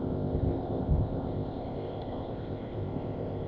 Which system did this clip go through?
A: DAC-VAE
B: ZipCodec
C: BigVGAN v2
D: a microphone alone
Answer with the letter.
B